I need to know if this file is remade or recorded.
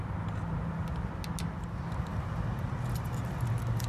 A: recorded